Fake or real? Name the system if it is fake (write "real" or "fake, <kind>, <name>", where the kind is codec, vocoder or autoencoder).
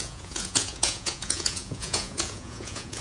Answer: fake, vocoder, Vocos